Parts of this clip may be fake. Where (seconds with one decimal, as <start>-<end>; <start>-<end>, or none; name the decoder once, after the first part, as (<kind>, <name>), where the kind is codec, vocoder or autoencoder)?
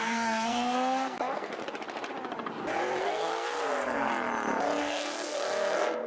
0.0-1.6 (codec, SNAC); 3.0-4.1; 4.8-6.1